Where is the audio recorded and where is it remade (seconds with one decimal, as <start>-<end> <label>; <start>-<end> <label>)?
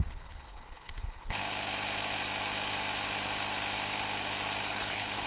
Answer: 0.0-1.4 remade; 1.4-4.6 recorded; 4.6-5.3 remade